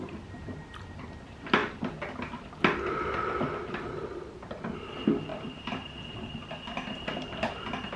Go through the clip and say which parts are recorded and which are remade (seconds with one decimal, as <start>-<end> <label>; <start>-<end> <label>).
0.0-5.3 recorded; 5.3-6.0 remade; 6.0-8.0 recorded